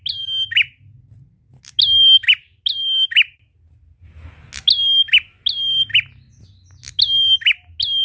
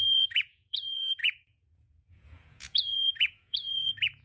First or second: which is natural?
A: first